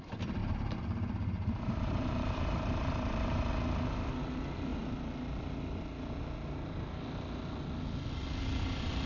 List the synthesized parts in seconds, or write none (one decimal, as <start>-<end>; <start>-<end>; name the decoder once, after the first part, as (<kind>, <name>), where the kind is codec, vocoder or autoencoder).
0.4-3.5 (vocoder, BigVGAN v2)